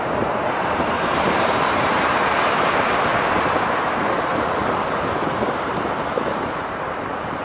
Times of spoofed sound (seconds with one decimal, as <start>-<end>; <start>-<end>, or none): 0.0-7.4